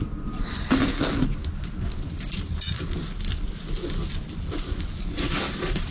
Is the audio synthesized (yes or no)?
yes